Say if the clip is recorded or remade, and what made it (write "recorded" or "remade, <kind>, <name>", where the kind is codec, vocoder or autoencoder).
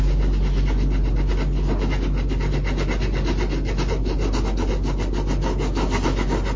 recorded